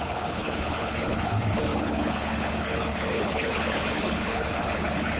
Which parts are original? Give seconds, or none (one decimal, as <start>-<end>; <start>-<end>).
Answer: none